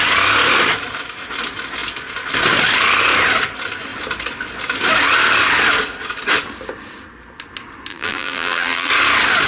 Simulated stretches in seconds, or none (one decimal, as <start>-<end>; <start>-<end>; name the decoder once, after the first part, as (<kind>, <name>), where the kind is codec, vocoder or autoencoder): 7.9-8.9 (vocoder, BigVGAN v2)